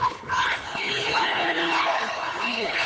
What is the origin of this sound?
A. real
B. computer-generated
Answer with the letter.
B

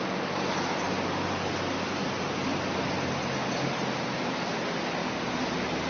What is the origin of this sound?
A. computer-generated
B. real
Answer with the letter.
B